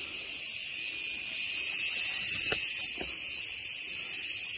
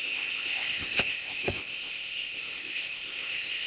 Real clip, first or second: first